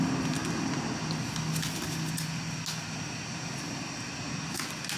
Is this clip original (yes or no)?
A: yes